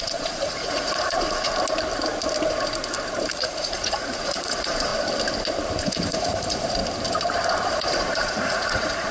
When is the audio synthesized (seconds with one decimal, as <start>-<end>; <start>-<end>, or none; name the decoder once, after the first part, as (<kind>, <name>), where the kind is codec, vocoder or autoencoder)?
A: 0.0-1.5 (vocoder, Vocos); 3.3-4.9; 5.8-6.8; 7.7-9.1

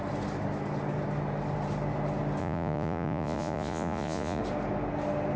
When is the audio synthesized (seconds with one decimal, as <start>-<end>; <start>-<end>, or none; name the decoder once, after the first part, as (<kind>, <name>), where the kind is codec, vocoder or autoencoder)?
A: 2.4-4.4 (vocoder, Vocos)

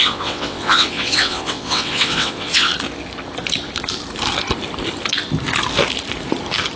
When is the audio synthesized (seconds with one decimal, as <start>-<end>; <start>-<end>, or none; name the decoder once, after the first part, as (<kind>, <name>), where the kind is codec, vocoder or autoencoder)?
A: 0.0-2.7 (vocoder, WaveNeXt)

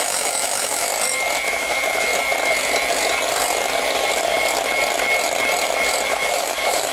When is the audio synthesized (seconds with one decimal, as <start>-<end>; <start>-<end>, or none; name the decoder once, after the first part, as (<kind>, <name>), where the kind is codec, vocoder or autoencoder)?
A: 0.0-0.9 (autoencoder, DAC-VAE); 1.5-2.1; 6.1-6.9